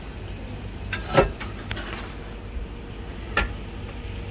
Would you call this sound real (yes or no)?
yes